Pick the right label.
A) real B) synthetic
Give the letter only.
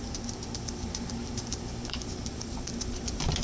B